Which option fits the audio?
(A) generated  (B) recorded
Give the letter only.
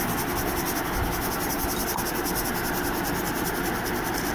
B